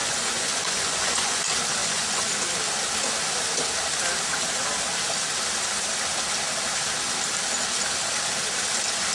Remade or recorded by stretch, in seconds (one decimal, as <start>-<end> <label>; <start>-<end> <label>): 0.0-1.4 remade; 1.4-1.8 recorded; 1.8-2.3 remade; 2.3-9.1 recorded